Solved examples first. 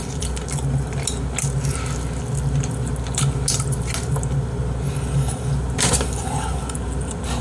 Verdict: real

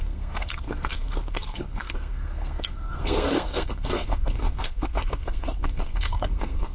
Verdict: fake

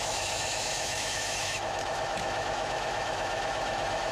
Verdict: fake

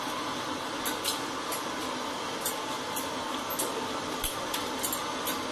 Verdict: real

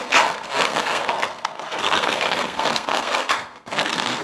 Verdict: fake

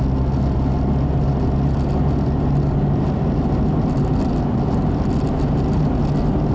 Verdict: real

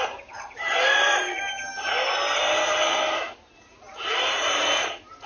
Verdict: real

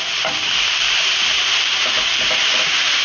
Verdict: fake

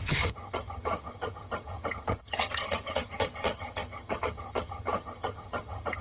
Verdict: fake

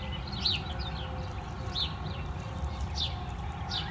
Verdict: real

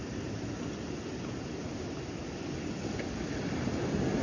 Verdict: real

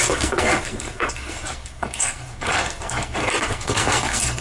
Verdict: fake